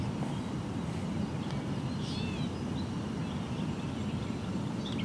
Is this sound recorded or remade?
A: recorded